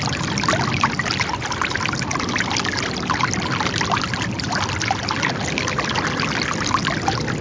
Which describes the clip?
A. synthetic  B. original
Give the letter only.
B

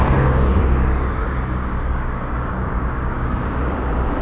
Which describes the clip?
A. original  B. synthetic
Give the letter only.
B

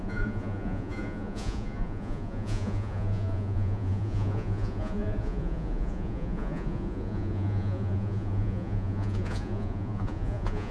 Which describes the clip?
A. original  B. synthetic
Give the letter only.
B